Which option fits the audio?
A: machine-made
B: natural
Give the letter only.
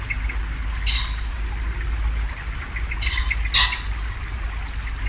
B